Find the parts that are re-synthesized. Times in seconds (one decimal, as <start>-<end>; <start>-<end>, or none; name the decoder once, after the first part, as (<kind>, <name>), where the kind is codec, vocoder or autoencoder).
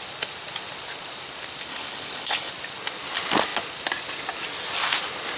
1.7-2.5 (codec, HILCodec)